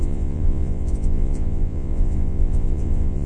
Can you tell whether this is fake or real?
fake